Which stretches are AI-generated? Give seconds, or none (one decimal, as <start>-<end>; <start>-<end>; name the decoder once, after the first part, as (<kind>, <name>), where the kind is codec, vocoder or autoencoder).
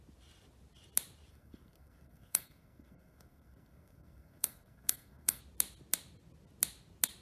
1.3-5.4 (codec, SNAC)